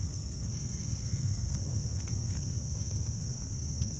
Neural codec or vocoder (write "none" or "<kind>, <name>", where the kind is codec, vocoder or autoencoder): codec, SNAC